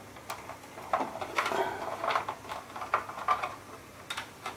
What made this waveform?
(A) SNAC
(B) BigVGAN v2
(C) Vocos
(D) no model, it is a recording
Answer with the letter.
D